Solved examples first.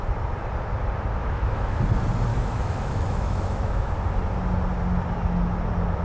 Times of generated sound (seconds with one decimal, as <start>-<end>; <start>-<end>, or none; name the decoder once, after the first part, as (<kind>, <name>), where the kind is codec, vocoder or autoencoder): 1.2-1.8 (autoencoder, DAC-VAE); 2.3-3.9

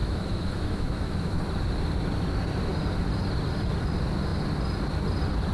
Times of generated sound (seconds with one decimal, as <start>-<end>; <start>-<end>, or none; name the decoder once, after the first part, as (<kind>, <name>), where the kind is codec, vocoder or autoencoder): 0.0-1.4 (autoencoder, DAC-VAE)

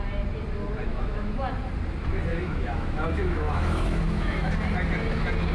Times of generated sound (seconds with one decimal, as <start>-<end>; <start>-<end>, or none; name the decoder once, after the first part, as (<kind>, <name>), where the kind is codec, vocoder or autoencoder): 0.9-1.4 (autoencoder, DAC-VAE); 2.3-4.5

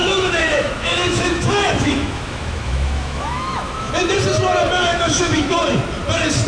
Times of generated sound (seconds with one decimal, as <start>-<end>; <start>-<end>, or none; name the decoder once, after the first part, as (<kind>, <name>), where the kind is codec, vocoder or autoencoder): 0.0-3.9 (autoencoder, DAC-VAE); 4.9-5.6

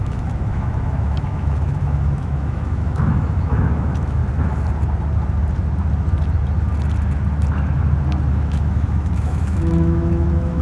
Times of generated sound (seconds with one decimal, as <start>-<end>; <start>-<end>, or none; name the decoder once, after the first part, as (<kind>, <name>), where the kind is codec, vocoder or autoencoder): 0.0-4.2 (autoencoder, DAC-VAE); 8.3-10.6